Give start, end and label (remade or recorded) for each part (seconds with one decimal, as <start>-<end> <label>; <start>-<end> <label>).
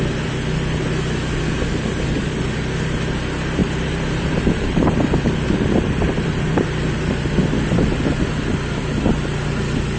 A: 0.0-3.6 recorded; 3.6-6.9 remade; 6.9-10.0 recorded